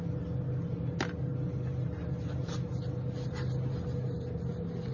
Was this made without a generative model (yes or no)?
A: yes